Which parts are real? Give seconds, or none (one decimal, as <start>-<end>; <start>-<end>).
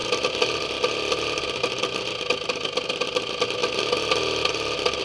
0.0-3.6